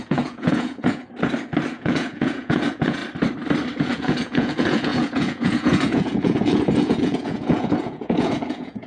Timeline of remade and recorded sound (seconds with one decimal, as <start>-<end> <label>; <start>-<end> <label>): 0.0-1.0 remade; 1.0-1.7 recorded; 1.7-3.0 remade; 3.0-3.8 recorded; 3.8-8.9 remade